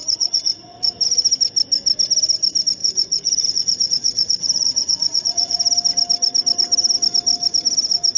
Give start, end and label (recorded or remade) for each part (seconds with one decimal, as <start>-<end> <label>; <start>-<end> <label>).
0.0-0.9 remade; 0.9-2.8 recorded; 2.8-5.6 remade; 5.6-8.2 recorded